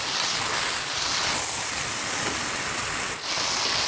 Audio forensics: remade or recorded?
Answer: recorded